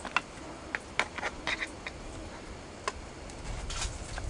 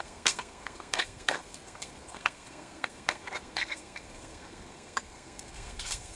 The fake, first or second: second